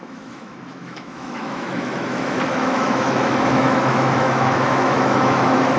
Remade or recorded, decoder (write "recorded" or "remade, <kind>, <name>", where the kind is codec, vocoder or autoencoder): remade, autoencoder, DAC-VAE